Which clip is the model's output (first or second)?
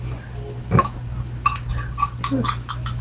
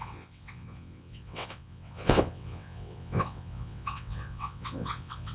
second